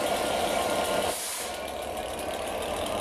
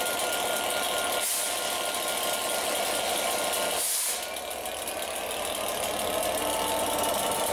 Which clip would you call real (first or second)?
second